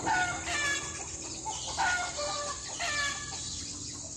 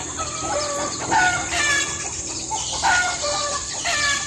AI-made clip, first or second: second